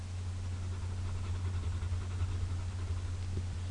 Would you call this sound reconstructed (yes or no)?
no